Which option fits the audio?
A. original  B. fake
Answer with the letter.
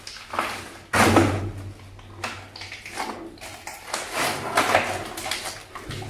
A